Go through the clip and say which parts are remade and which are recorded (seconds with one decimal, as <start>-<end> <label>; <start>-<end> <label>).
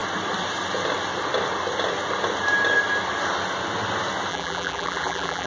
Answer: 0.0-4.3 recorded; 4.3-5.5 remade